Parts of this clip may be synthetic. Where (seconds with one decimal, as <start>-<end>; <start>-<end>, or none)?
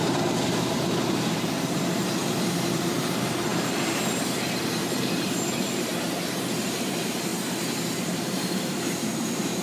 0.0-5.9; 6.6-9.6